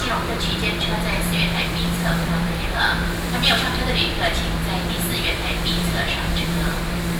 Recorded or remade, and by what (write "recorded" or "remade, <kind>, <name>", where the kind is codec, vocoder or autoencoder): remade, vocoder, BigVGAN v2